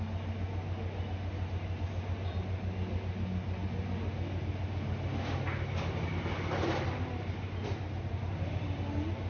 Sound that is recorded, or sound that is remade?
recorded